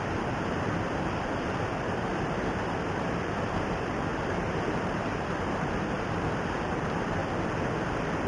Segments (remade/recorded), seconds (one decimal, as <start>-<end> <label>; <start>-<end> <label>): 0.0-7.2 remade; 7.2-8.3 recorded